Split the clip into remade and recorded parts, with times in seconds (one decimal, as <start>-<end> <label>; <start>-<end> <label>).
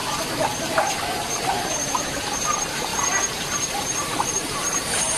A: 0.0-0.7 recorded; 0.7-2.9 remade; 2.9-3.7 recorded; 3.7-5.2 remade